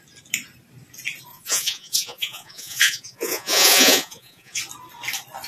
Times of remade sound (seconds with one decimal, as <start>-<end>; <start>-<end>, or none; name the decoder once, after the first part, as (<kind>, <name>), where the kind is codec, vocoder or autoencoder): 1.3-4.6 (vocoder, Vocos)